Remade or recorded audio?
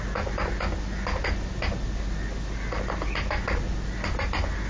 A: recorded